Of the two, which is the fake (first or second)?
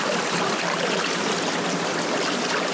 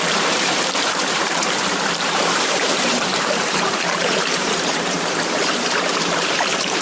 second